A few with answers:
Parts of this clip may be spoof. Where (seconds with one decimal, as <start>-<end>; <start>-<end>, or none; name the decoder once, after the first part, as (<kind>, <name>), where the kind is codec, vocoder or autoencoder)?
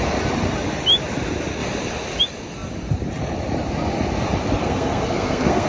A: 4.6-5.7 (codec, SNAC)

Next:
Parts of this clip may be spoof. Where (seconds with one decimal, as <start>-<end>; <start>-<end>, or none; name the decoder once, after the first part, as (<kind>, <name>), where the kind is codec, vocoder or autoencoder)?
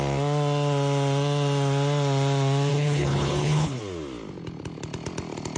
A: 2.7-3.8 (codec, HILCodec)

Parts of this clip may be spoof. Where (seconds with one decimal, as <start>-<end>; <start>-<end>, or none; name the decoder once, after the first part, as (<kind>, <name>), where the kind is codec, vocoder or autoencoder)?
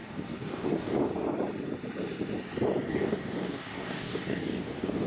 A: 0.0-1.1 (codec, DAC); 2.9-5.1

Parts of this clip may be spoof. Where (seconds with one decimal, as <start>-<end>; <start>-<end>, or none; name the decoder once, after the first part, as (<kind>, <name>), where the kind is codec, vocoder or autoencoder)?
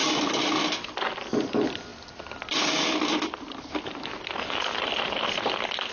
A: none